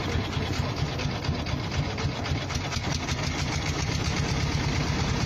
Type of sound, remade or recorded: recorded